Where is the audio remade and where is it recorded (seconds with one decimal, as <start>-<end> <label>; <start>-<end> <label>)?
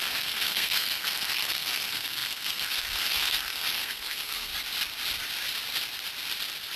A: 0.0-4.5 remade; 4.5-6.8 recorded